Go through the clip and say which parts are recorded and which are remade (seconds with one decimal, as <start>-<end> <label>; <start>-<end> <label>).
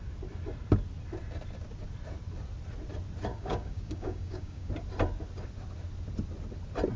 0.0-3.3 recorded; 3.3-4.7 remade; 4.7-7.0 recorded